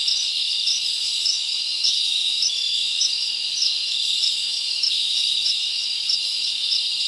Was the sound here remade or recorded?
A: remade